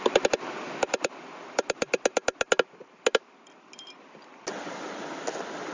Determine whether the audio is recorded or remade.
recorded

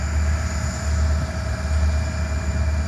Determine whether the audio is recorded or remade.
recorded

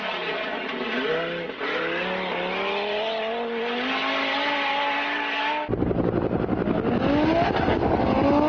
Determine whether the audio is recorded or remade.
recorded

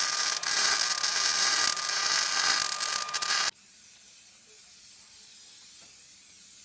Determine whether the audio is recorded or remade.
recorded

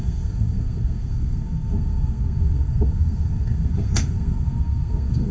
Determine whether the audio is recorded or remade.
remade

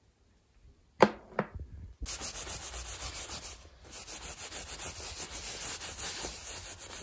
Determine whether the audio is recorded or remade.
recorded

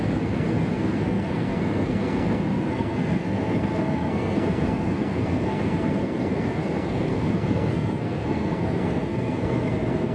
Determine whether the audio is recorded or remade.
remade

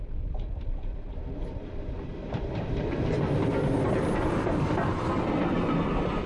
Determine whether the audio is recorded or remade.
recorded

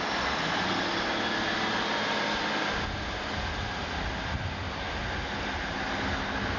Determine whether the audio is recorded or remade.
recorded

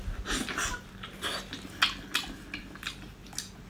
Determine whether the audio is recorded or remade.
recorded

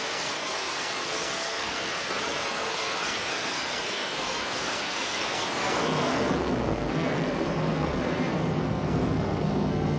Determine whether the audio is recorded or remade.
remade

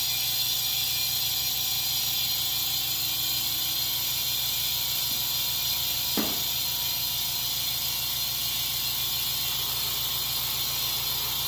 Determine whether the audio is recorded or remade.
recorded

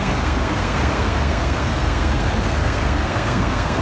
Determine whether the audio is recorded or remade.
remade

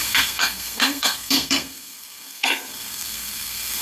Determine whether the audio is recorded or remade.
remade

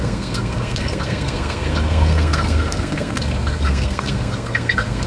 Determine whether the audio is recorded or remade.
remade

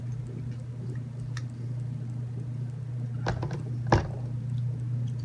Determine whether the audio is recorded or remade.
recorded